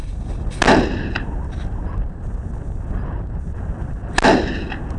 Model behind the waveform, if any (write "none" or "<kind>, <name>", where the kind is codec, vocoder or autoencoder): none